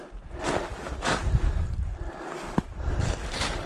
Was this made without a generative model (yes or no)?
yes